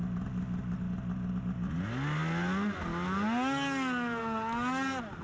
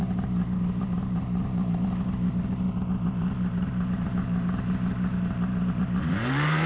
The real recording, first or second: first